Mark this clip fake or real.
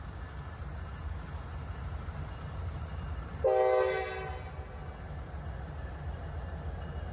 real